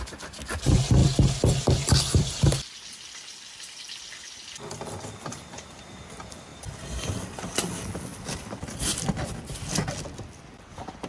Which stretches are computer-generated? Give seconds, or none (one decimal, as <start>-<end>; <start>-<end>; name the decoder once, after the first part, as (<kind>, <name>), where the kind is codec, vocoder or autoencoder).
none